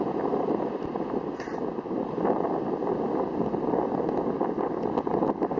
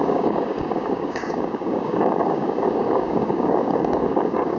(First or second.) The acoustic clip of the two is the first